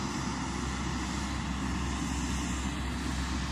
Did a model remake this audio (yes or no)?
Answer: no